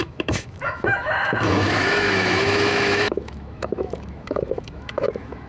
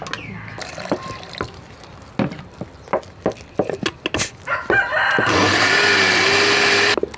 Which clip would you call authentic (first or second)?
second